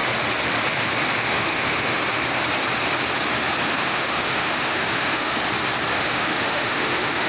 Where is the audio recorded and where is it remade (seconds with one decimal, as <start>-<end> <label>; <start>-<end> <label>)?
0.0-1.3 recorded; 1.3-2.0 remade; 2.0-3.6 recorded; 3.6-5.3 remade; 5.3-5.9 recorded; 5.9-7.3 remade